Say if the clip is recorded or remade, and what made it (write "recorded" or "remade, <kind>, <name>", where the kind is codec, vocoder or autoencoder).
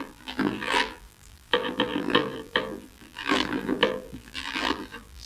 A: remade, vocoder, BigVGAN v2